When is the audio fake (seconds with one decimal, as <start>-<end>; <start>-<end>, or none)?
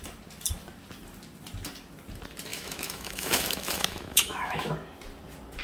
2.5-4.7